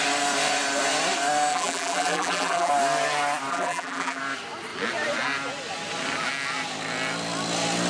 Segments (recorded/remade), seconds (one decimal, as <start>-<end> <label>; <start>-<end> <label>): 0.0-1.5 recorded; 1.5-2.7 remade; 2.7-3.5 recorded; 3.5-4.2 remade; 4.2-7.9 recorded